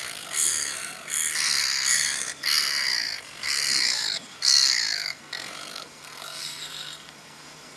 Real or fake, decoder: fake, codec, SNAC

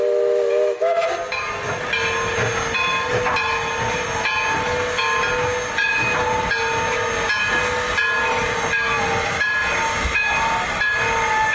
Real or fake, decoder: real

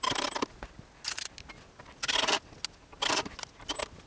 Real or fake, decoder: real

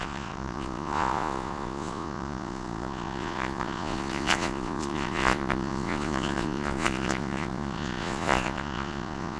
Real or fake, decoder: fake, vocoder, Vocos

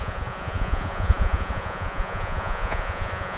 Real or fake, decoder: fake, vocoder, Vocos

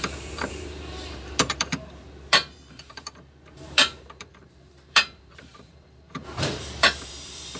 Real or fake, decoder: fake, vocoder, BigVGAN v2